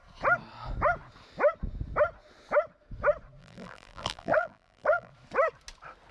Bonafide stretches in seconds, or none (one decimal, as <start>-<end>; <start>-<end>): 0.0-3.4; 5.1-6.1